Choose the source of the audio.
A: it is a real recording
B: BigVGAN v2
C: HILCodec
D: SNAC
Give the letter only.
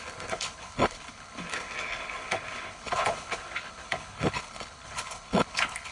C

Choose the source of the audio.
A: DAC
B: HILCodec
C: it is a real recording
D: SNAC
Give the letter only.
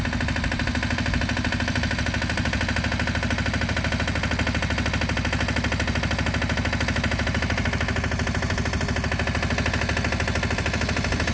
C